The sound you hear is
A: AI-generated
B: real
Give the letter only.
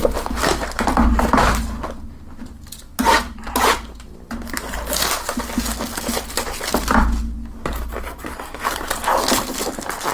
B